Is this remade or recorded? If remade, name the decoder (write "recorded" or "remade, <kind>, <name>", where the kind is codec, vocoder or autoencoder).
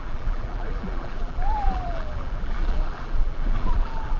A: remade, vocoder, BigVGAN v2